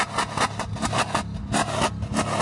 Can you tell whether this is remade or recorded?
recorded